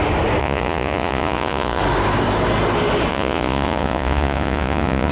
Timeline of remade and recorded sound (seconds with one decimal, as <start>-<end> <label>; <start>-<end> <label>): 0.0-0.4 recorded; 0.4-1.8 remade; 1.8-3.1 recorded; 3.1-5.1 remade